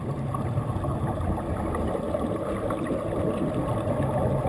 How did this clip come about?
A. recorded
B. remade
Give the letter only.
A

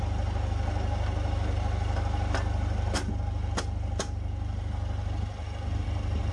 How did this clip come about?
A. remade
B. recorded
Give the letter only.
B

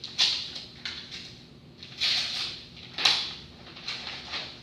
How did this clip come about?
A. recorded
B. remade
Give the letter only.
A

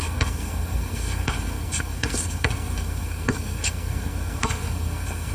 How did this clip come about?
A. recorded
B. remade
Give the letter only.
B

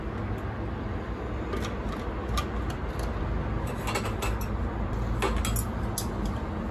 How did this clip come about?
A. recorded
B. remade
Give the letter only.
A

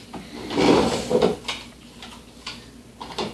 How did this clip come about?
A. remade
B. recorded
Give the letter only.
B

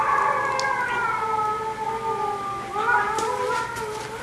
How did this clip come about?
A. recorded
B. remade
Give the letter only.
A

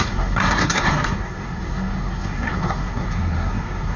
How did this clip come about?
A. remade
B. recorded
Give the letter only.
A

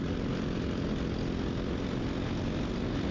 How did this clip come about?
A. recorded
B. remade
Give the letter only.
A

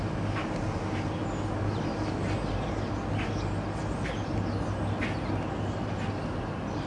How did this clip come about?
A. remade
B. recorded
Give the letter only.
B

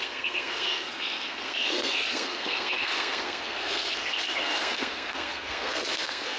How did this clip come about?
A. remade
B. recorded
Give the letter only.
A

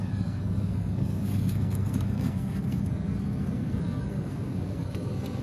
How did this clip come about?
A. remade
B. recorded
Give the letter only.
A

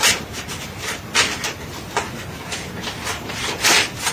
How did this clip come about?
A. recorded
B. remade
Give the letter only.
A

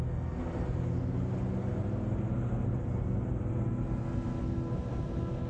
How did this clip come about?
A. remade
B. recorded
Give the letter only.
B